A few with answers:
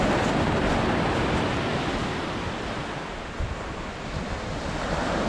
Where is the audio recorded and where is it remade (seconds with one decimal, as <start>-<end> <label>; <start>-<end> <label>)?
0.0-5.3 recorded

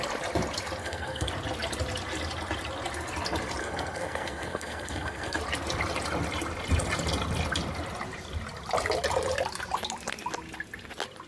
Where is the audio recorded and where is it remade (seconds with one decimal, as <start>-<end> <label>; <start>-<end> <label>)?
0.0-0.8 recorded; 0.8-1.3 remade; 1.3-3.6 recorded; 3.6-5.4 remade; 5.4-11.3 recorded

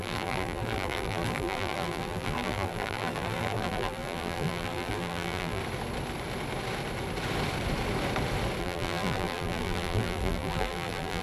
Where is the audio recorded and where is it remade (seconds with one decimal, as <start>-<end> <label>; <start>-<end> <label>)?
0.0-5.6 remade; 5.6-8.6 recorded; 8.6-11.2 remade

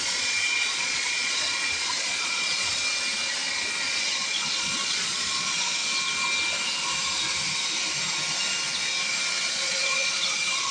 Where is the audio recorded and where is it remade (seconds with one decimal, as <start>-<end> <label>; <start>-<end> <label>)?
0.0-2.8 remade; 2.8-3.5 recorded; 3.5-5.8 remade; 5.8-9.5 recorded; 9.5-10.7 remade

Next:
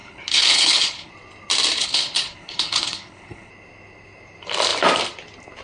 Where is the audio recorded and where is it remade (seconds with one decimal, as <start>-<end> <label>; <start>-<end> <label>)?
0.0-1.1 remade; 1.1-1.8 recorded; 1.8-3.5 remade; 3.5-5.6 recorded

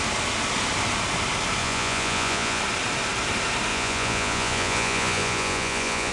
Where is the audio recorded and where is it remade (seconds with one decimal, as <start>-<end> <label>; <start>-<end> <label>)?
0.0-1.6 recorded; 1.6-2.6 remade; 2.6-3.7 recorded; 3.7-6.1 remade